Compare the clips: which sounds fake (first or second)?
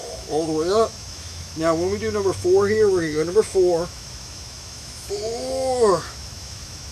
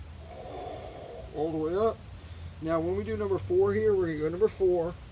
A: first